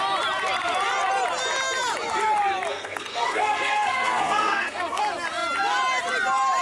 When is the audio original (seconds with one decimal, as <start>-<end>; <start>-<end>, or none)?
0.0-2.7; 5.0-6.6